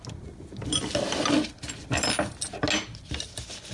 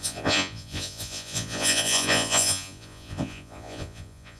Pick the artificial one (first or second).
second